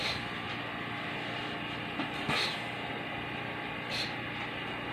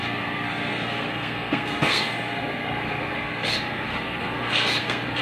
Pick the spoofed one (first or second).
second